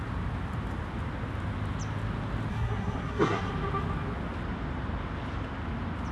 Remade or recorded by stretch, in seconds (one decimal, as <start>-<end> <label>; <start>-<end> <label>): 0.0-2.5 recorded; 2.5-3.5 remade; 3.5-6.1 recorded